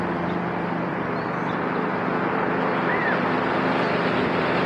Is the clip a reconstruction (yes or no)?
yes